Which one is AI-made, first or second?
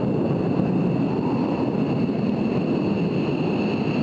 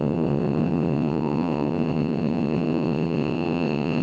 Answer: second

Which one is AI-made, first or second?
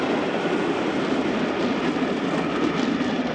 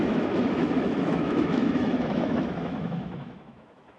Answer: second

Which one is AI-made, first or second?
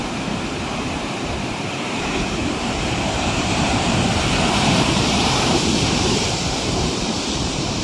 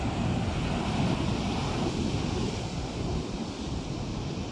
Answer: first